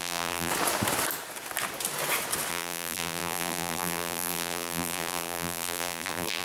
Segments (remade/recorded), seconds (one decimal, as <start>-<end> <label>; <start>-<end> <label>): 0.0-0.5 remade; 0.5-2.5 recorded; 2.5-6.4 remade